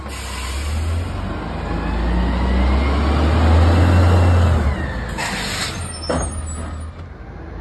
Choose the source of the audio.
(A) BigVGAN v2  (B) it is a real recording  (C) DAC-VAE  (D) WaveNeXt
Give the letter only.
B